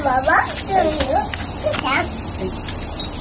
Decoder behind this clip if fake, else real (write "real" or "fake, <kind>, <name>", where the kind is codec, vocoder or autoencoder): real